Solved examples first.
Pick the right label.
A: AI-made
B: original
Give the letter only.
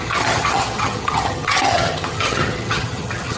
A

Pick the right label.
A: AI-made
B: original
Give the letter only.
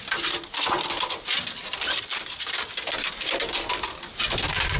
B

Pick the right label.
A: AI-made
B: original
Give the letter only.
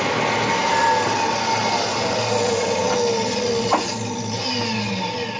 B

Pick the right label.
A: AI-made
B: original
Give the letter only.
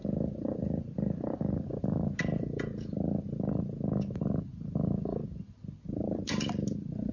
B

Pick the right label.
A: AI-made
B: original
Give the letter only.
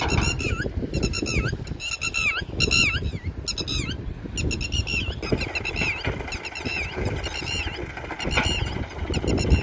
B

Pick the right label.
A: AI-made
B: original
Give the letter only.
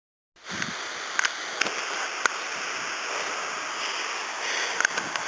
B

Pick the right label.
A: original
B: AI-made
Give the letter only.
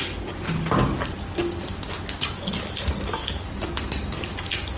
A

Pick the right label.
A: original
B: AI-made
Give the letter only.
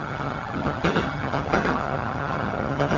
B